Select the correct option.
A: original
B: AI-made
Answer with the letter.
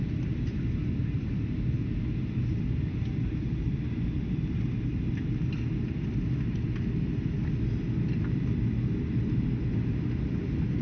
A